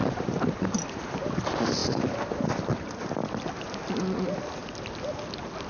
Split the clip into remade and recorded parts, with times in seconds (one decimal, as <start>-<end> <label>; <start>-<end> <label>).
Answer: 0.0-4.6 recorded; 4.6-5.2 remade; 5.2-5.7 recorded